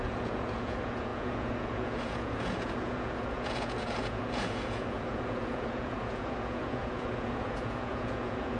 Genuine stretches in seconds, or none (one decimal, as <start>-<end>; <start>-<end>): none